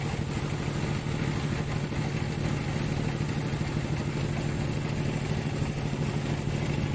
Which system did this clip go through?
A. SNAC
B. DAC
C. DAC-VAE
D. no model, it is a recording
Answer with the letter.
D